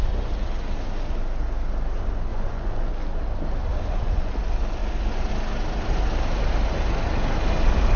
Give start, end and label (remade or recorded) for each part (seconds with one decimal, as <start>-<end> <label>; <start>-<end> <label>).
0.0-2.3 recorded; 2.3-2.9 remade; 2.9-3.7 recorded; 3.7-4.3 remade; 4.3-8.0 recorded

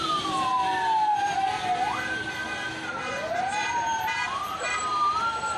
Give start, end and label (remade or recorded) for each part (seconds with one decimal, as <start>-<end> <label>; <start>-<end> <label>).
0.0-0.5 remade; 0.5-3.3 recorded; 3.3-5.6 remade

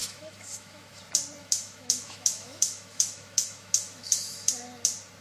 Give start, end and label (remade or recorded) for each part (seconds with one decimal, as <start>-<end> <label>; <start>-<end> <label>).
0.0-1.0 remade; 1.0-1.4 recorded; 1.4-4.5 remade; 4.5-5.2 recorded

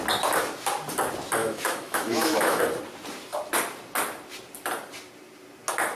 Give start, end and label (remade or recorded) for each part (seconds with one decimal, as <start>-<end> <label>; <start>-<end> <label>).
0.0-1.4 recorded; 1.4-2.6 remade; 2.6-5.9 recorded